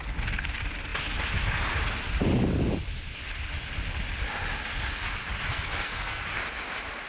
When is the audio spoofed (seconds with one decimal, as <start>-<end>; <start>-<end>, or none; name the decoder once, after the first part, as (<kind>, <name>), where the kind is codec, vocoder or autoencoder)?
5.5-6.2 (codec, SNAC)